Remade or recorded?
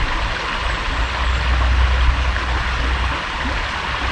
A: recorded